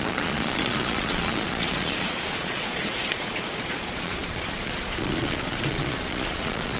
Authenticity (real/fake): fake